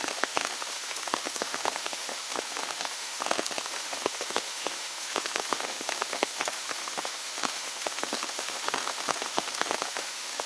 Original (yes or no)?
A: no